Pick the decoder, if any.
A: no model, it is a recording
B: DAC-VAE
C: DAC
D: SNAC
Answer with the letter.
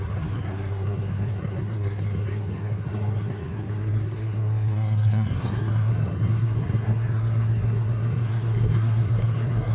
D